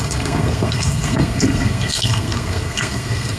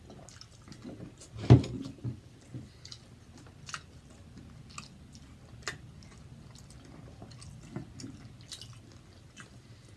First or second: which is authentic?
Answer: second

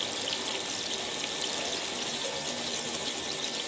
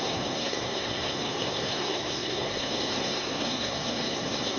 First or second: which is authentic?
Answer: first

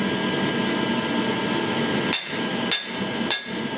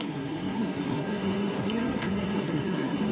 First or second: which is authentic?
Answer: first